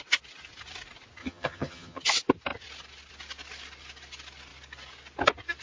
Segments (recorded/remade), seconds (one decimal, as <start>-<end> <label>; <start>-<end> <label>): 0.0-1.2 recorded; 1.2-2.0 remade; 2.0-5.6 recorded